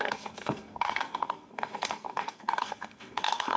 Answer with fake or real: fake